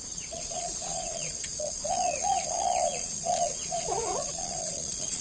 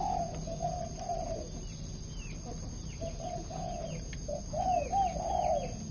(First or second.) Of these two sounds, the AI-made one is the first